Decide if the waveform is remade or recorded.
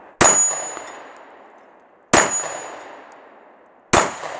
recorded